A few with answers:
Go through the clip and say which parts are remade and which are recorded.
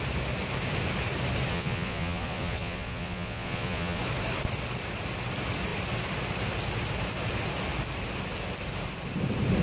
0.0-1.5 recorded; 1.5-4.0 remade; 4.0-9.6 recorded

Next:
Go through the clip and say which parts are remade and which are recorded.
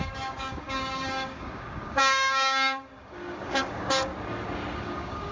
0.0-4.1 remade; 4.1-4.8 recorded; 4.8-5.3 remade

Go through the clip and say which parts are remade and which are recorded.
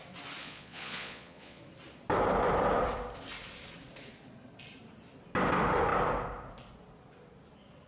0.0-0.4 recorded; 0.4-1.6 remade; 1.6-7.9 recorded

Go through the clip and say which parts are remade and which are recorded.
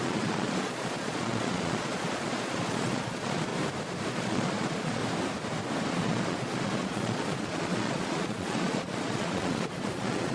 0.0-3.5 remade; 3.5-4.1 recorded; 4.1-5.0 remade; 5.0-5.9 recorded; 5.9-10.3 remade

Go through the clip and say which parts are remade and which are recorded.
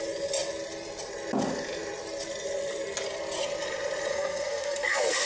0.0-4.1 recorded; 4.1-5.3 remade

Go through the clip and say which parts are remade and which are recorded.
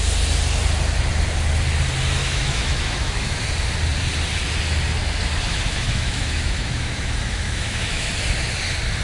0.0-2.2 recorded; 2.2-3.4 remade; 3.4-5.5 recorded; 5.5-8.1 remade; 8.1-9.0 recorded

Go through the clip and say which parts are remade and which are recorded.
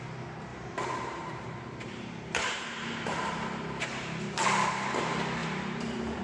0.0-0.5 recorded; 0.5-4.2 remade; 4.2-5.4 recorded; 5.4-6.2 remade